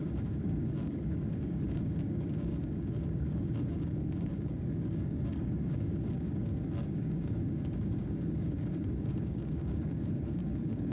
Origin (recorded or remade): remade